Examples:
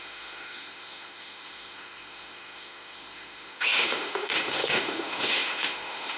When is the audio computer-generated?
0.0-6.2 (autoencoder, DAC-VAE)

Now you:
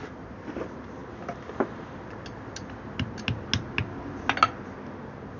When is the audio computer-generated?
none

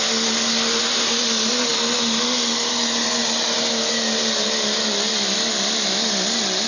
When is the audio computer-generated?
none